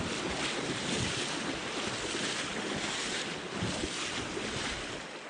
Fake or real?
real